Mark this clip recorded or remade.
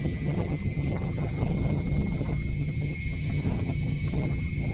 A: remade